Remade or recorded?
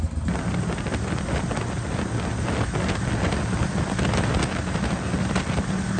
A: recorded